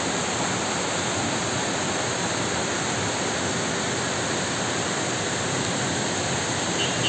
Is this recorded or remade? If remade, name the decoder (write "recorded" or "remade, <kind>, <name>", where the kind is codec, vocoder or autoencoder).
recorded